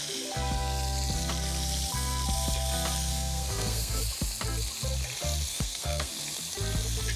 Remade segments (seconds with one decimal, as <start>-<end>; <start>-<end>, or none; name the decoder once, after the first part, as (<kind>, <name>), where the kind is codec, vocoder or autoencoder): 3.1-4.0 (codec, SNAC); 5.5-6.1